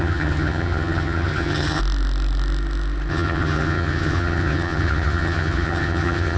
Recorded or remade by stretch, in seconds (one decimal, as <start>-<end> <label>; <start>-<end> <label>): 0.0-1.8 remade; 1.8-3.1 recorded; 3.1-6.4 remade